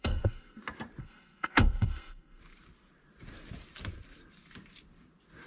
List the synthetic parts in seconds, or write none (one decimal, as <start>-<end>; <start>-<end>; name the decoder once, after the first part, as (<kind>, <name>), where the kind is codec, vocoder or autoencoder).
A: 0.0-0.6 (codec, SNAC); 1.0-2.4